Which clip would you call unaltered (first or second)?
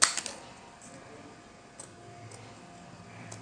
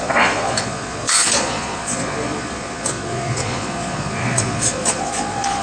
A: first